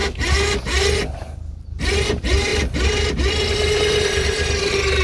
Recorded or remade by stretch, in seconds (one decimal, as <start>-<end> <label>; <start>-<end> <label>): 0.0-5.0 recorded